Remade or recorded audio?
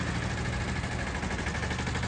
recorded